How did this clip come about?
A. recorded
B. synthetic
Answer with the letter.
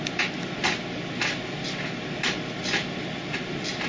A